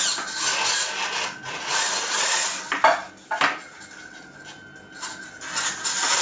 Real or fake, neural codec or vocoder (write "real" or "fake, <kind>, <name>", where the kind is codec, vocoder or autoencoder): real